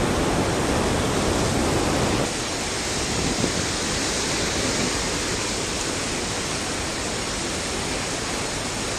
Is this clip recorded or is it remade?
recorded